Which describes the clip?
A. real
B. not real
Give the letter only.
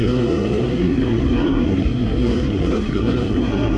B